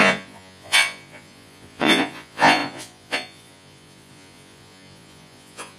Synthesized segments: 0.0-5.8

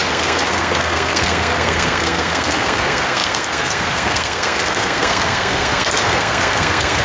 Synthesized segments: 0.0-7.0

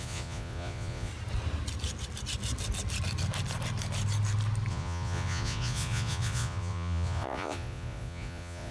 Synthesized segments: 0.0-1.1; 4.7-8.7

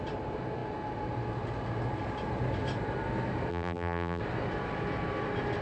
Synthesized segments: 3.5-4.2

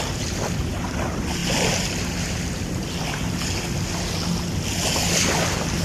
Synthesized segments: none

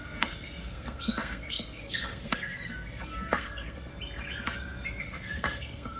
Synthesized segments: 0.0-3.9; 5.0-6.0

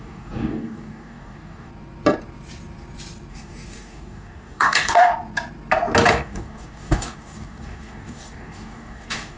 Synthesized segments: 0.0-1.7; 3.3-5.1; 6.1-9.4

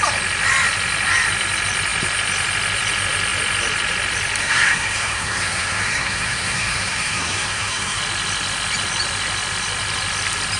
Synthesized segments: 4.4-8.0